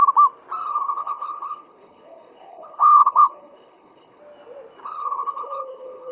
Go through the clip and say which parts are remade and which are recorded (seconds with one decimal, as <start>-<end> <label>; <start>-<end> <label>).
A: 0.0-0.7 recorded; 0.7-4.2 remade; 4.2-4.8 recorded; 4.8-6.1 remade